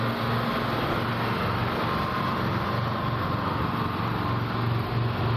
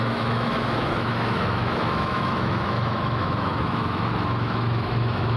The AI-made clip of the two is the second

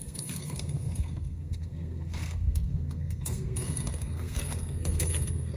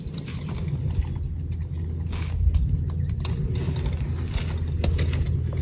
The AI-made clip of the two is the first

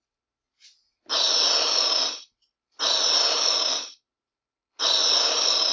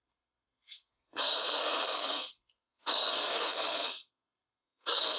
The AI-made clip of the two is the second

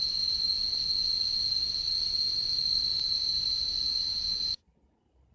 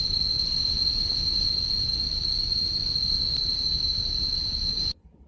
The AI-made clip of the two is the second